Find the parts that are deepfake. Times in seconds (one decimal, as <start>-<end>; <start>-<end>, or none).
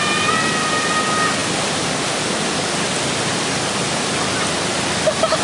none